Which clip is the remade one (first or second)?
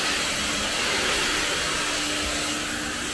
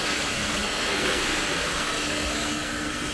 second